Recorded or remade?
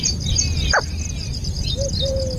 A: recorded